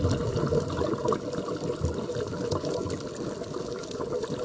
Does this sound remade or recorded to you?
recorded